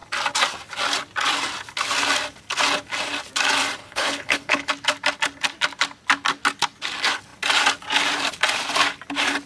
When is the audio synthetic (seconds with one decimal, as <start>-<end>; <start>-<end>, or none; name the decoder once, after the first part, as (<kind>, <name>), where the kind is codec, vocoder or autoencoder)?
3.8-4.7 (codec, HILCodec)